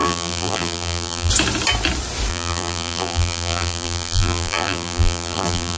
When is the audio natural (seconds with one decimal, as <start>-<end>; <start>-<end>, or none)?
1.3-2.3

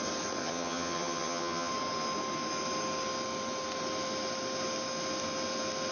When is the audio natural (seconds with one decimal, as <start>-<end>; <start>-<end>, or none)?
0.0-0.4; 1.7-5.9

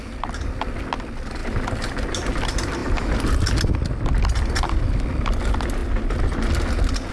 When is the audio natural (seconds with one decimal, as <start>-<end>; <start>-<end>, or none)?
0.0-7.1

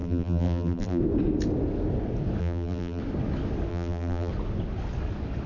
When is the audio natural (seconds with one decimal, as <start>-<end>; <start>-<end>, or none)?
1.0-2.4; 3.0-3.7; 4.3-5.5

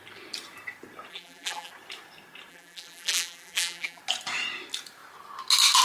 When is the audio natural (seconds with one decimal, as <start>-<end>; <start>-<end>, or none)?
0.0-1.1; 1.7-2.5; 4.0-5.8

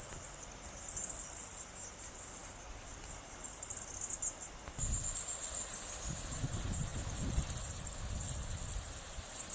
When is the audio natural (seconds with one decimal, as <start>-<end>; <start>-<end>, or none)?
0.0-9.5